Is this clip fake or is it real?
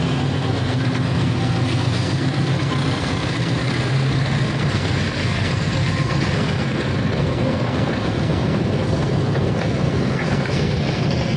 fake